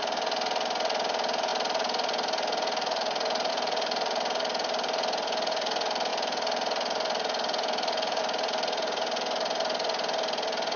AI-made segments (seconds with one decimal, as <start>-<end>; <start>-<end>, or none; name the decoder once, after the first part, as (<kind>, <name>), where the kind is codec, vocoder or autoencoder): 6.1-8.2 (vocoder, BigVGAN v2)